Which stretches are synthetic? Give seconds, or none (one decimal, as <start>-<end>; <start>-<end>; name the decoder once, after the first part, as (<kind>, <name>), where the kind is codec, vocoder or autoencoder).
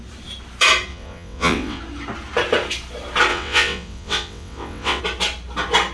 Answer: 0.9-1.8 (vocoder, WaveNeXt); 3.3-5.0